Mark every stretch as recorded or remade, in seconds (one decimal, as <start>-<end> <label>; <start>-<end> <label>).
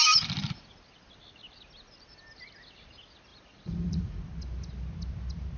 0.0-3.3 recorded; 3.3-4.2 remade; 4.2-5.6 recorded